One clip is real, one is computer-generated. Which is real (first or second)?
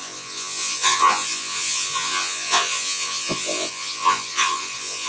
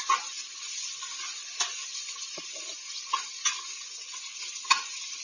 second